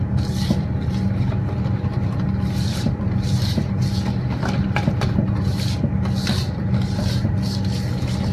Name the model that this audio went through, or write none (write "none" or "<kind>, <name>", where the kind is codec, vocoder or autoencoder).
none